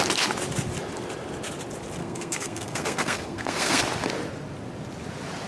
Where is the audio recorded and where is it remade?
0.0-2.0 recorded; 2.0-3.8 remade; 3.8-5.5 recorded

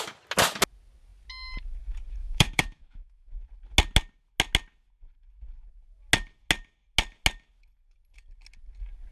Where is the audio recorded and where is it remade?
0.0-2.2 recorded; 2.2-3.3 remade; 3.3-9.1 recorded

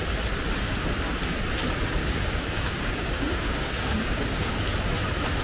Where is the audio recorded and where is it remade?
0.0-2.0 recorded; 2.0-4.5 remade; 4.5-5.4 recorded

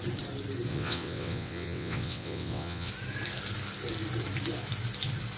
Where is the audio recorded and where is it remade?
0.0-0.7 recorded; 0.7-2.9 remade; 2.9-5.4 recorded

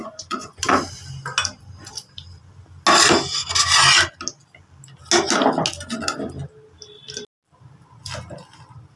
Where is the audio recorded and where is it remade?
0.0-0.9 remade; 0.9-9.0 recorded

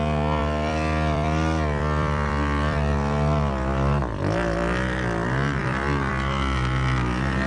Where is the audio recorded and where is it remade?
0.0-0.4 recorded; 0.4-4.2 remade; 4.2-5.6 recorded; 5.6-6.1 remade; 6.1-7.5 recorded